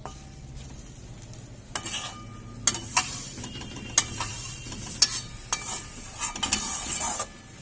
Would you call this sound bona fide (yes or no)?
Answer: yes